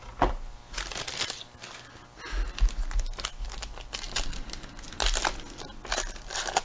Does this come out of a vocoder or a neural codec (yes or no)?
no